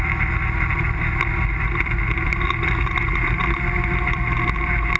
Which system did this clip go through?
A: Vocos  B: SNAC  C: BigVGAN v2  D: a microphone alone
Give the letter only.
D